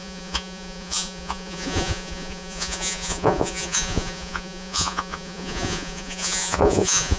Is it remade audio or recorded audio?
remade